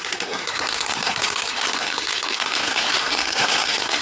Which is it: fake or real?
fake